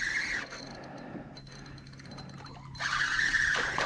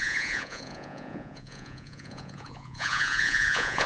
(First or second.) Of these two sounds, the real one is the first